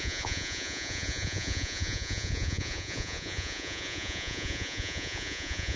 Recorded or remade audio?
remade